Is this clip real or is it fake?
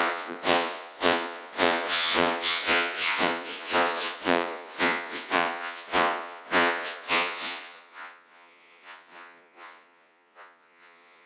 fake